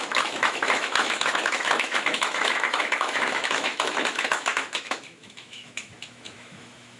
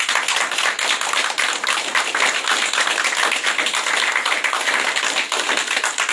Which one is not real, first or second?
first